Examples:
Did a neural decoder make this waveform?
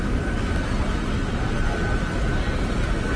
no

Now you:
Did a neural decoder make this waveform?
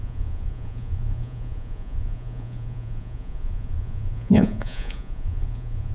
yes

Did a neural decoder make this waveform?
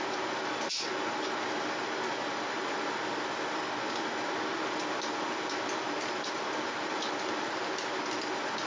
no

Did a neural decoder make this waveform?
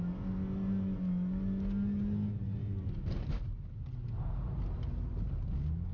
no